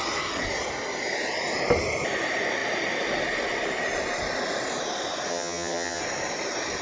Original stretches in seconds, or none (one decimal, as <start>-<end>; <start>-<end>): 0.0-5.3; 6.0-6.8